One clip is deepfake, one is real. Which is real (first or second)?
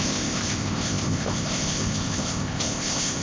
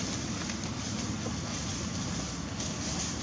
second